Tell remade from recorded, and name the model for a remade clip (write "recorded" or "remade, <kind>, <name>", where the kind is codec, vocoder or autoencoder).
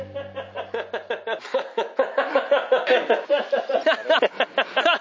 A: recorded